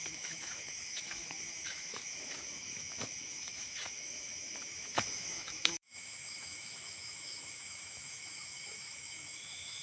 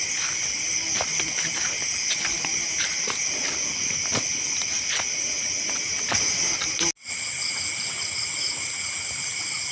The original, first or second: second